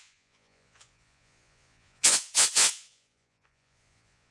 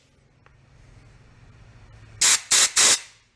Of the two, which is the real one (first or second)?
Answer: second